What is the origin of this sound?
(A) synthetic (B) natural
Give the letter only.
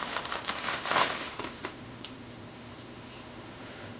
A